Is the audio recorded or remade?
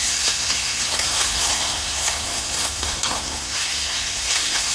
remade